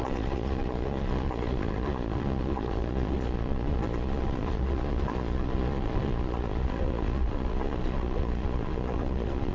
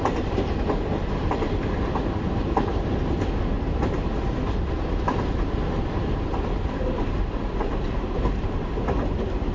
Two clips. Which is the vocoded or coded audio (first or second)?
first